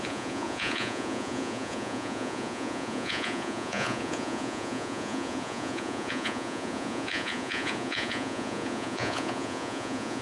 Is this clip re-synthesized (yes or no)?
yes